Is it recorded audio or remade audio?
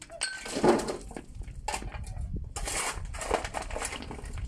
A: recorded